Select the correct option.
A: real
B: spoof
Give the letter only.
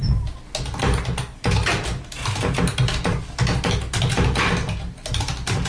A